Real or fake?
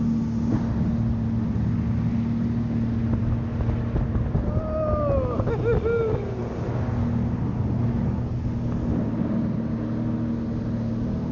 real